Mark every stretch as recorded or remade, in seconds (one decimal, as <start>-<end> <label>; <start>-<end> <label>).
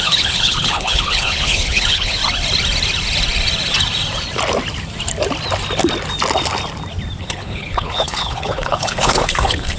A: 0.0-2.2 remade; 2.2-7.2 recorded; 7.2-9.8 remade